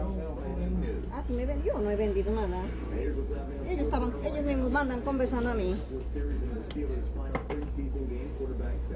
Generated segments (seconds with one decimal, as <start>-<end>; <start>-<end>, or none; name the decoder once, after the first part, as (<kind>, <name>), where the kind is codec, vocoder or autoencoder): none